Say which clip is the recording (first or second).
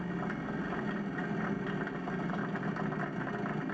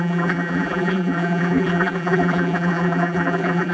first